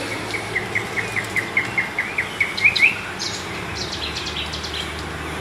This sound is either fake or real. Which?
real